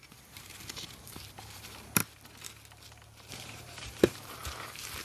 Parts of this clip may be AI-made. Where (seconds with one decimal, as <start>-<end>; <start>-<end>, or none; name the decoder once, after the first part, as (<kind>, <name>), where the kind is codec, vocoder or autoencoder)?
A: 0.0-2.0 (vocoder, BigVGAN v2); 3.3-5.0